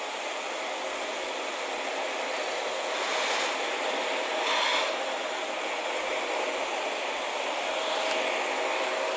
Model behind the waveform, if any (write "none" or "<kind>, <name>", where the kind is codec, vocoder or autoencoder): none